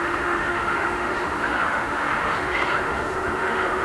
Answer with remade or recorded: remade